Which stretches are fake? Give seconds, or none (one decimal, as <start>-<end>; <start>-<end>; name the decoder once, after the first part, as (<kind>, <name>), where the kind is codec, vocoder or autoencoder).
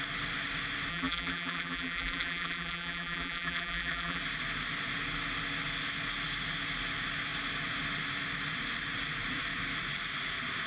0.9-4.2 (vocoder, BigVGAN v2)